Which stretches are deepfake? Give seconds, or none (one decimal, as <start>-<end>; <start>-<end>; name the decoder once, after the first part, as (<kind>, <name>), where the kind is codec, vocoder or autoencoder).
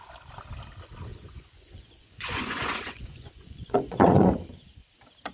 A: 1.1-4.3 (vocoder, Vocos)